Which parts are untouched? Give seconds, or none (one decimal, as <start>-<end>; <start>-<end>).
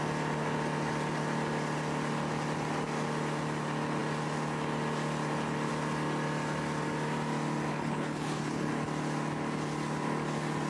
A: 0.0-7.7; 8.7-10.7